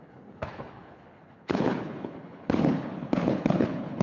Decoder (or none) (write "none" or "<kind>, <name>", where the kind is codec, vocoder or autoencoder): codec, HILCodec